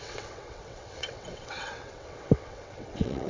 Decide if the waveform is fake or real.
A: fake